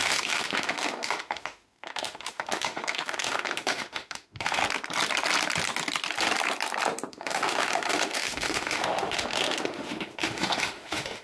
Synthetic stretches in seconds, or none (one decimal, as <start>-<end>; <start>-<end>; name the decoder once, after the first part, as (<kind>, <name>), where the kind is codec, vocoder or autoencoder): 0.0-4.6 (autoencoder, DAC-VAE); 7.1-11.2